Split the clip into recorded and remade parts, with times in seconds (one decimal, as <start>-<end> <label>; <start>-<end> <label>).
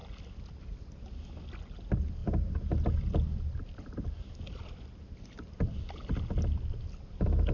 0.0-7.5 recorded